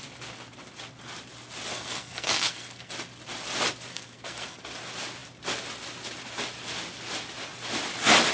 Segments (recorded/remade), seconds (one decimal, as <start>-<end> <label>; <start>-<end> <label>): 0.0-1.7 recorded; 1.7-2.9 remade; 2.9-3.9 recorded; 3.9-4.6 remade; 4.6-8.3 recorded